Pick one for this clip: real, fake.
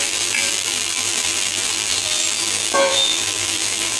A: fake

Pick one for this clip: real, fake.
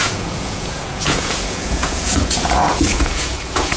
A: fake